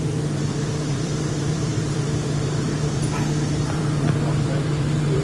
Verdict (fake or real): fake